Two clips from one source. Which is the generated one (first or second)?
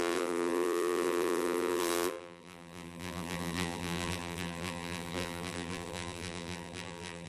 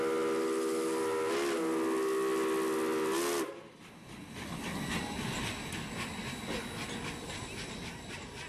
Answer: first